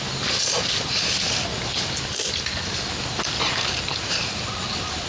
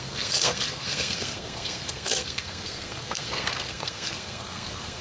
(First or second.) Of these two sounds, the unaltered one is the first